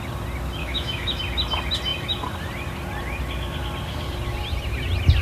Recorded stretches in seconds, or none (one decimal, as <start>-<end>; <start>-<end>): 0.0-0.6; 1.2-5.2